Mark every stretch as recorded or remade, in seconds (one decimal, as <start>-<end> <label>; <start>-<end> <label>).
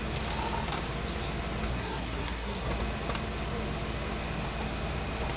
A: 0.0-1.7 recorded; 1.7-2.7 remade; 2.7-5.4 recorded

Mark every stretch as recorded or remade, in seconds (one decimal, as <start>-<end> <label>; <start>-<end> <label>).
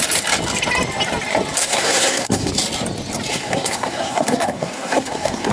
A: 0.0-1.6 recorded; 1.6-2.5 remade; 2.5-3.3 recorded; 3.3-5.5 remade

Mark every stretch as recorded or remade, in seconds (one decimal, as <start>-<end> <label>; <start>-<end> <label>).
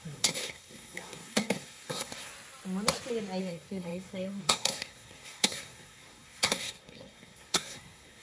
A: 0.0-2.3 remade; 2.3-3.4 recorded; 3.4-8.2 remade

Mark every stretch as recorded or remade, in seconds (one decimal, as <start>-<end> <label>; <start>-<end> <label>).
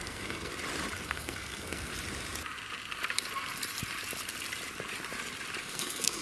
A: 0.0-0.5 remade; 0.5-1.0 recorded; 1.0-1.9 remade; 1.9-5.6 recorded; 5.6-6.2 remade